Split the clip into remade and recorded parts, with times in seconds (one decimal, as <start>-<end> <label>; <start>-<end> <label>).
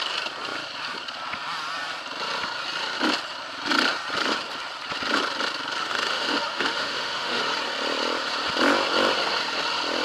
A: 0.0-5.8 recorded; 5.8-7.4 remade; 7.4-10.0 recorded